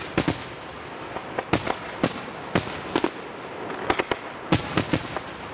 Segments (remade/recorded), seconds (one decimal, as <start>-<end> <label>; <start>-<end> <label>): 0.0-5.5 recorded